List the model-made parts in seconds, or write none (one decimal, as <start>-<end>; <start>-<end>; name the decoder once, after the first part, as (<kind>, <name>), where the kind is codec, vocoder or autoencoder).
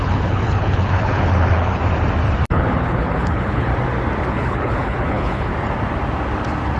0.0-1.8 (codec, HILCodec); 2.5-3.7; 4.3-5.5